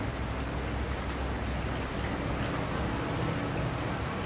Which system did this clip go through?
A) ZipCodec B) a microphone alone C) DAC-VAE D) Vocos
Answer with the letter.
B